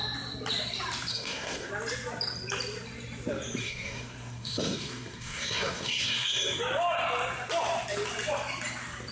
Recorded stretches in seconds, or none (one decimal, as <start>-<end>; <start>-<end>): 0.0-1.1; 1.7-3.6; 6.6-9.1